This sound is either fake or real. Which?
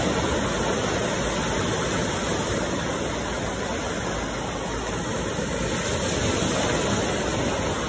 real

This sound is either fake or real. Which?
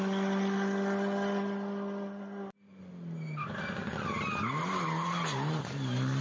real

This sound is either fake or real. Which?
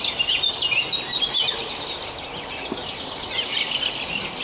real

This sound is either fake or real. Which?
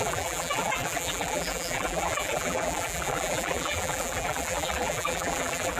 fake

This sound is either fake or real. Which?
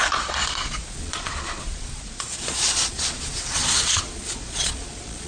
fake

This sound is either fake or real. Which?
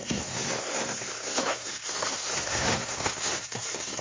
fake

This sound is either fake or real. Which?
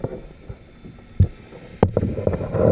real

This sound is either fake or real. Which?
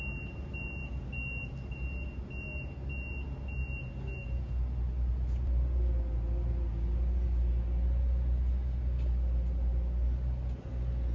real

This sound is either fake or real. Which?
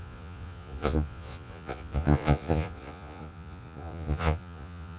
fake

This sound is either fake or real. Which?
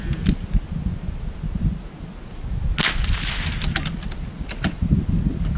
real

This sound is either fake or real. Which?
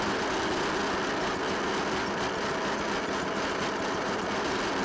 real